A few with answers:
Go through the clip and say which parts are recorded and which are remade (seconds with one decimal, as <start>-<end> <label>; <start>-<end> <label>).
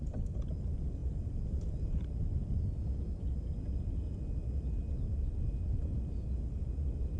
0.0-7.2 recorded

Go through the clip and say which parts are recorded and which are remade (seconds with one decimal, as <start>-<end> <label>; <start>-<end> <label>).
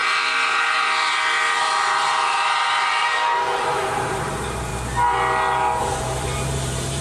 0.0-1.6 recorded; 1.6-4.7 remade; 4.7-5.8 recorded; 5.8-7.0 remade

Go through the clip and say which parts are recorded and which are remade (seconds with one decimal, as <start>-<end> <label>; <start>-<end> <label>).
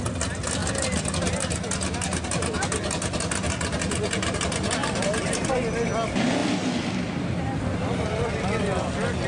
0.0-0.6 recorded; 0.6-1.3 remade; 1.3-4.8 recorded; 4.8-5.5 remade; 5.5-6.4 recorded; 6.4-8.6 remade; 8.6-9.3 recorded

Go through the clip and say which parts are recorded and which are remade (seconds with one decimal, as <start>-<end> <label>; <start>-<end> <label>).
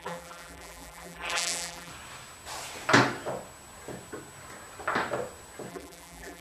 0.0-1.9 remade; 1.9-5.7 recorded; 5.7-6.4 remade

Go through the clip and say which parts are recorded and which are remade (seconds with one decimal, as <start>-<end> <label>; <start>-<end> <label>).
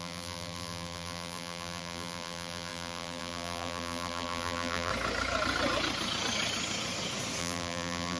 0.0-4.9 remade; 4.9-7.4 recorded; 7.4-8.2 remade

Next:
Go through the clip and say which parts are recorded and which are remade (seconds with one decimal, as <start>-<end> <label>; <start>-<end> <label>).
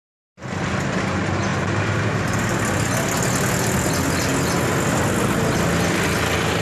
0.0-6.6 recorded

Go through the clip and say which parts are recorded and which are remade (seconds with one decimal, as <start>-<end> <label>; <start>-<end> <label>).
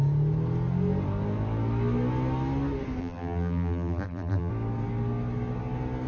0.0-3.0 recorded; 3.0-4.5 remade; 4.5-6.1 recorded